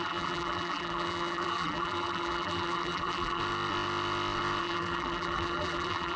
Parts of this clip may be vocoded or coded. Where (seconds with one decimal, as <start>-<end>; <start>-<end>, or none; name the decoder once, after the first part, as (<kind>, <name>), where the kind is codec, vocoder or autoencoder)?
0.0-3.4 (vocoder, BigVGAN v2); 4.6-6.2